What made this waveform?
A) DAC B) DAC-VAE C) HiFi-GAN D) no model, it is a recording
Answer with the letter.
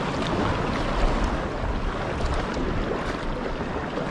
D